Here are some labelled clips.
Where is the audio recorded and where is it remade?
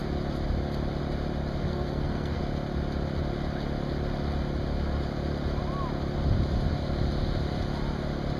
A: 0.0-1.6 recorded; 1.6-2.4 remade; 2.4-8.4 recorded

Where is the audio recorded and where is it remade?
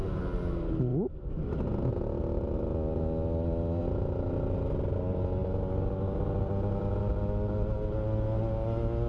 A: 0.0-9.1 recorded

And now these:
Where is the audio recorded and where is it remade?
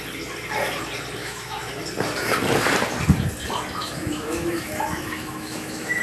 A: 0.0-1.2 recorded; 1.2-1.7 remade; 1.7-3.8 recorded; 3.8-6.0 remade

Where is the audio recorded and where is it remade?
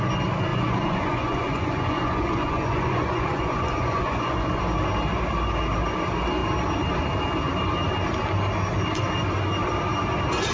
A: 0.0-0.5 recorded; 0.5-4.6 remade; 4.6-10.5 recorded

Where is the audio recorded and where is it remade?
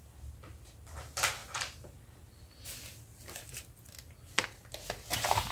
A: 0.0-1.4 recorded; 1.4-2.2 remade; 2.2-5.5 recorded